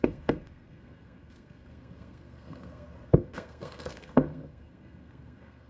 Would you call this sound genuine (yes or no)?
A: no